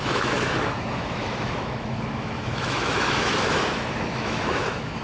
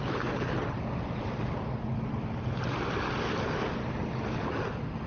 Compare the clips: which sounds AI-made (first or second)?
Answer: first